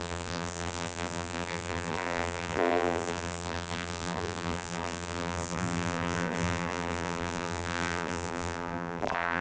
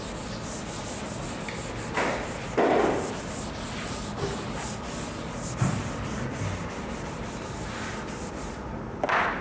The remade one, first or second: first